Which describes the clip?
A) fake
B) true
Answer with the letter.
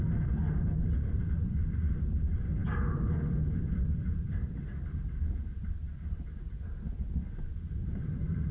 A